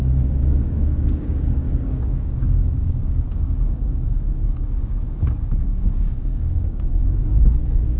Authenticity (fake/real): fake